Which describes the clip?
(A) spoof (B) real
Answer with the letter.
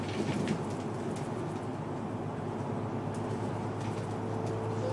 B